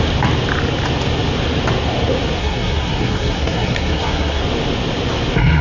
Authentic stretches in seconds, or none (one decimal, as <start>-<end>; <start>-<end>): 0.0-2.4; 4.4-5.6

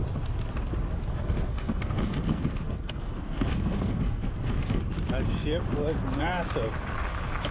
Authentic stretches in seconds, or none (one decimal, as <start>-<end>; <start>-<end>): 0.0-1.1; 4.8-7.5

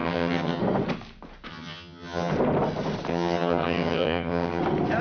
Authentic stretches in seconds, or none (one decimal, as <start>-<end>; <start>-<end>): 0.6-1.5; 2.3-3.1; 4.6-5.0

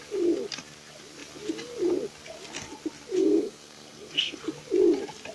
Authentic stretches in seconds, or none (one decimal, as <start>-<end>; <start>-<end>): 0.0-3.2; 4.4-5.3

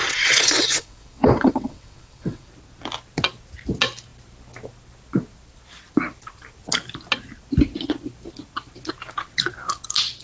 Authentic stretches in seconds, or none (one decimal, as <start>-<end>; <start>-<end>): 2.5-10.2